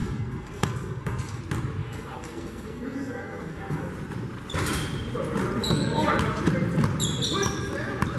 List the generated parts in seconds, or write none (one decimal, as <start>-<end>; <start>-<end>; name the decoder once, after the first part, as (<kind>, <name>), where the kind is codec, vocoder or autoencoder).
0.0-1.4 (codec, SNAC); 1.8-3.9; 5.6-6.1